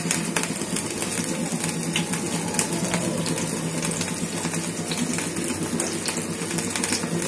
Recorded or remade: recorded